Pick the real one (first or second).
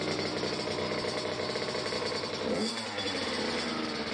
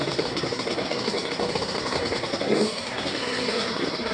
first